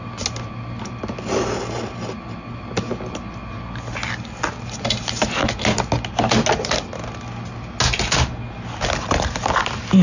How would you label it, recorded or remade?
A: recorded